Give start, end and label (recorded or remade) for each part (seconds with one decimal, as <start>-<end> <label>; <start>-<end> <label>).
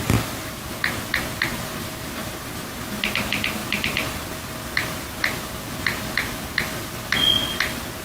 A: 0.0-2.2 recorded; 2.2-2.8 remade; 2.8-8.0 recorded